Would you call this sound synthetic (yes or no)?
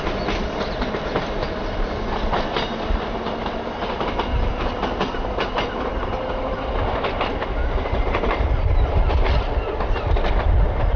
no